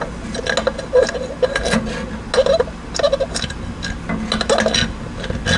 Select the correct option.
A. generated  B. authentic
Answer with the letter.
B